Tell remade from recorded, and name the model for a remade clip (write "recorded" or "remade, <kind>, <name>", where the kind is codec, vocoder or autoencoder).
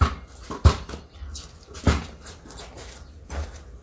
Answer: recorded